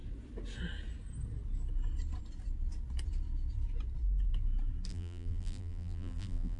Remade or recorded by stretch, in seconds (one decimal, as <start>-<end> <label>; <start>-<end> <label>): 0.0-4.9 recorded; 4.9-6.6 remade